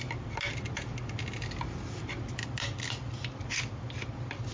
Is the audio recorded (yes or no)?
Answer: yes